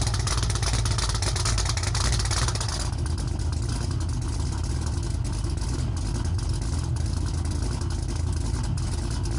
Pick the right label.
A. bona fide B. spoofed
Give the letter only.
A